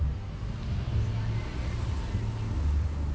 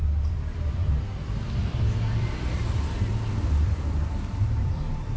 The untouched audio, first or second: first